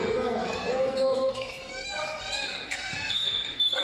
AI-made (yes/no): yes